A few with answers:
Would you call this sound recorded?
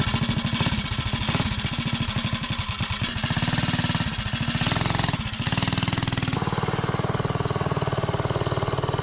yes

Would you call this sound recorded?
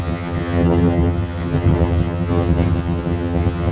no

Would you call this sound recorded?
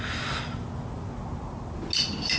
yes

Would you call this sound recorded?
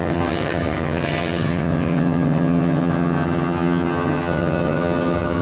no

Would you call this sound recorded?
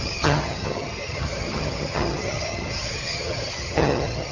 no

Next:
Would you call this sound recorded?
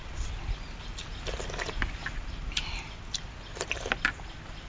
yes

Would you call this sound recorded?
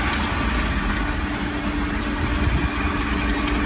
yes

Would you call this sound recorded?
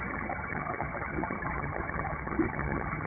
no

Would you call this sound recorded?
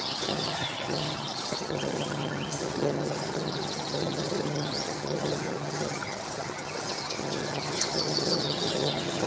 no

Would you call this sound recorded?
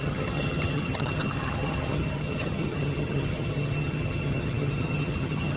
no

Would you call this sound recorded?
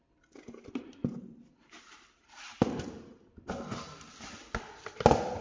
yes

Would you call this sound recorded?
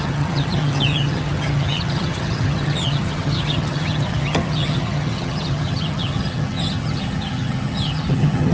no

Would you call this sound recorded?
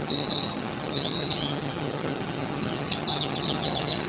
no